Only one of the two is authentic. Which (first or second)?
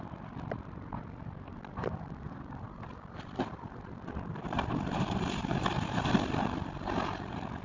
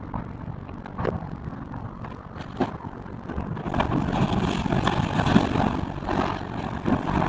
second